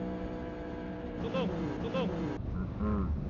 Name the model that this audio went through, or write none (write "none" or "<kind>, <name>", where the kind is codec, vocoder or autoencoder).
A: none